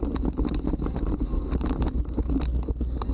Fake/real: real